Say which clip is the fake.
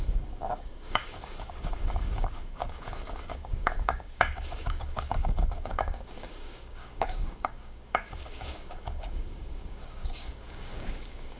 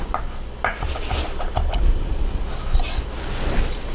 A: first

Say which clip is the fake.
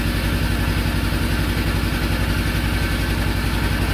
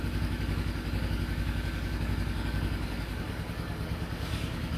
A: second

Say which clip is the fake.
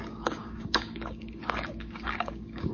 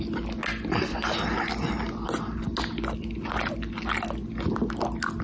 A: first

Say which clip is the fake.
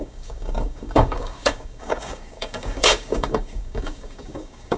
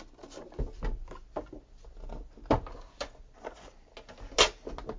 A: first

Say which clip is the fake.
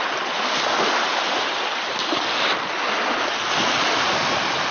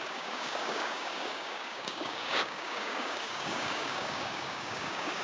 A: second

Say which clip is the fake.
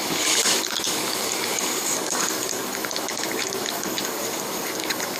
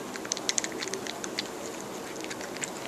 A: first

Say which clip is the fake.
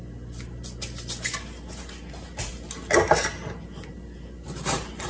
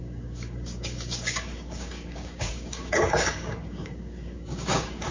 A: second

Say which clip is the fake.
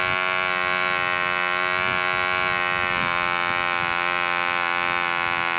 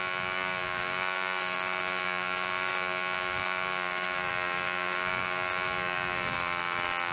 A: second